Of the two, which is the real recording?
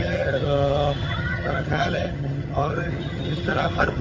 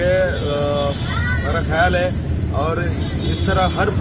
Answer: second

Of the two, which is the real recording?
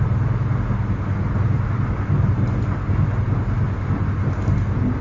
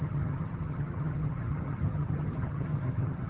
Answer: first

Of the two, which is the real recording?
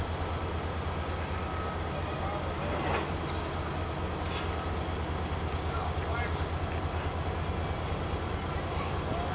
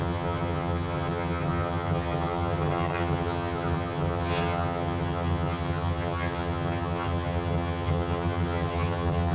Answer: first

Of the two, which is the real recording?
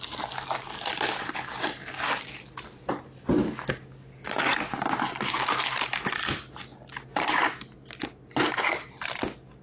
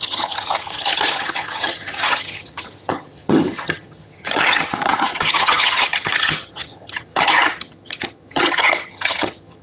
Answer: first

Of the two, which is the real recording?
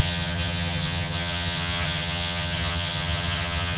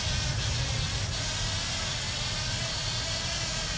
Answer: second